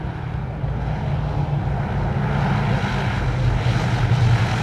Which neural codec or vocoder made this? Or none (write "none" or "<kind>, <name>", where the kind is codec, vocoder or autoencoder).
none